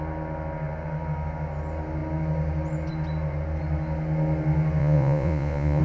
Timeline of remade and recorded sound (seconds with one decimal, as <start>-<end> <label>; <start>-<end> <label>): 0.0-4.8 recorded; 4.8-5.8 remade